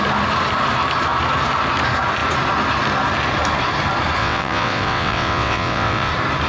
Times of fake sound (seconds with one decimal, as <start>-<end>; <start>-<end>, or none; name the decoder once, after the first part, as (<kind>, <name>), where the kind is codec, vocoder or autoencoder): 4.2-6.1 (vocoder, WaveNeXt)